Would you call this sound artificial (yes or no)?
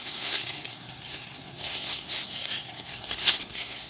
yes